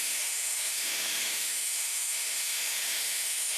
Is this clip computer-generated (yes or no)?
yes